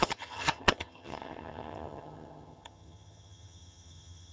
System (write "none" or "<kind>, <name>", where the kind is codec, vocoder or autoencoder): vocoder, HiFi-GAN